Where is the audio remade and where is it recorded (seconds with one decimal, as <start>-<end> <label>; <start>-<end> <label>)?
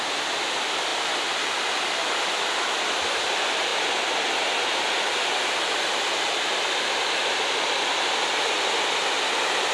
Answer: 0.0-9.7 recorded